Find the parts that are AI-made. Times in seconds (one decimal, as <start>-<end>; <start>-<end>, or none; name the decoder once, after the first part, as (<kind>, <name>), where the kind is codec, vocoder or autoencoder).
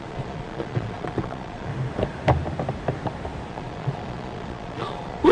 0.0-1.7 (vocoder, Vocos); 3.5-5.3